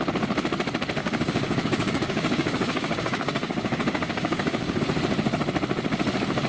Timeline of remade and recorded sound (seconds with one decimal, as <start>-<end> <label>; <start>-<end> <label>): 0.0-1.0 recorded; 1.0-4.8 remade; 4.8-6.5 recorded